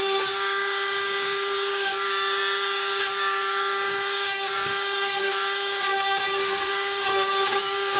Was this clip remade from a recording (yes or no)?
yes